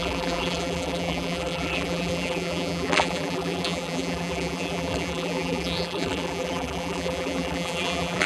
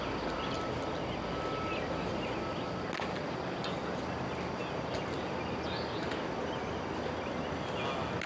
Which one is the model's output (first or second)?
first